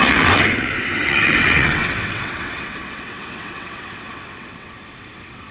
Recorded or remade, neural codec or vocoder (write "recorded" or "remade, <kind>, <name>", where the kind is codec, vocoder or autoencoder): remade, vocoder, WaveNeXt